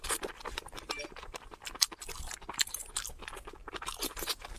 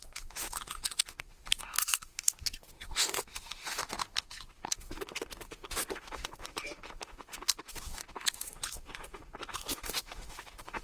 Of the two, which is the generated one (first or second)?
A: second